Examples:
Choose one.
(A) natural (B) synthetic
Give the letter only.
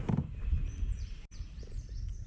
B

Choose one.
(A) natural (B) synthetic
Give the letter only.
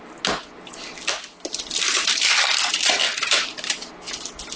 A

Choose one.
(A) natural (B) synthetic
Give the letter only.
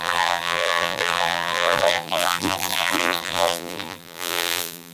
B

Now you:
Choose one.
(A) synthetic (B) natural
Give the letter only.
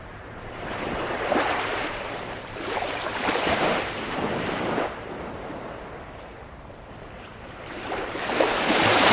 A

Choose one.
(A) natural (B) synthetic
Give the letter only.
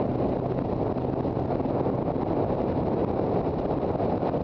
A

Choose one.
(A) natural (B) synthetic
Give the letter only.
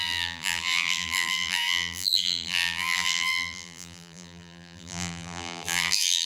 B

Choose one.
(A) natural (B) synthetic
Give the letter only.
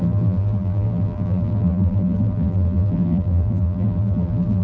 B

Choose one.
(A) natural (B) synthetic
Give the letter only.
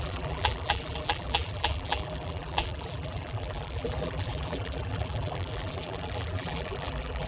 B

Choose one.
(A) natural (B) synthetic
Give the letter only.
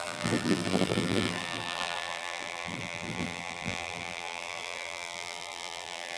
B